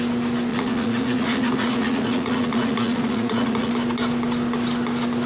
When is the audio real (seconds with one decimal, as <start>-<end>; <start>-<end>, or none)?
0.0-0.5; 3.7-5.3